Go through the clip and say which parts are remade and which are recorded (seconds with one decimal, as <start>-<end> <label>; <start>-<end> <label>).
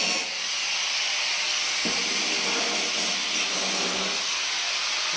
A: 0.0-5.2 recorded